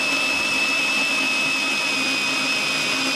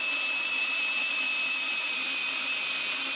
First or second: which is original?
first